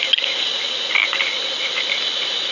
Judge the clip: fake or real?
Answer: real